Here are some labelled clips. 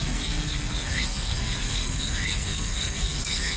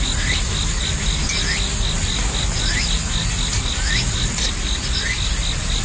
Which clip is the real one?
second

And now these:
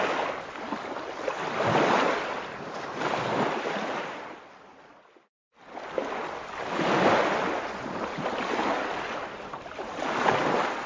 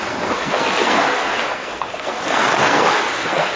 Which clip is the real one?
first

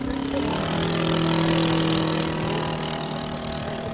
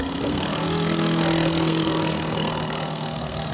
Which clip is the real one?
first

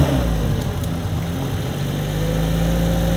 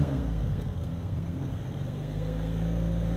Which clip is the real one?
first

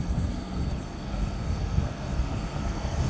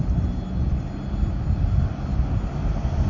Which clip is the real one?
second